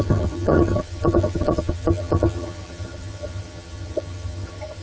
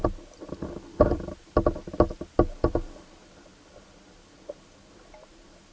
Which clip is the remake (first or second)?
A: first